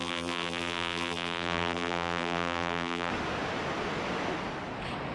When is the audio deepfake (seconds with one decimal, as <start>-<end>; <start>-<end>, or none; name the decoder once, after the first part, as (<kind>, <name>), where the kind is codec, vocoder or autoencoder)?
0.0-3.1 (vocoder, BigVGAN v2)